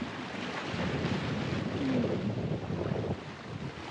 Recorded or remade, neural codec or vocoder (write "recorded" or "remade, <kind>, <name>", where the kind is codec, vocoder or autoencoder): recorded